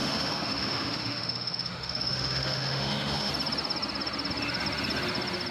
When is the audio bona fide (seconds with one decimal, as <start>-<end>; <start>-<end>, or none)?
3.3-5.5